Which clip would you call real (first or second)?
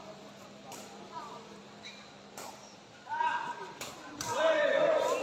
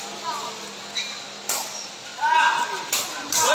second